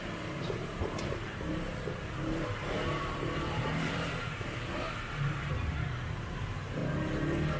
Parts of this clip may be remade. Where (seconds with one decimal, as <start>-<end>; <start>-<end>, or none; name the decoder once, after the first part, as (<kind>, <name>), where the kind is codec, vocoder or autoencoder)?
0.0-6.8 (vocoder, BigVGAN v2)

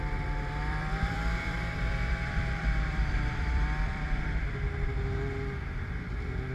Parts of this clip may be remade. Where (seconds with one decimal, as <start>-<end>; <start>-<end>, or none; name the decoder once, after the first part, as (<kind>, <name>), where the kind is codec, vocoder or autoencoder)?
0.6-4.5 (vocoder, BigVGAN v2)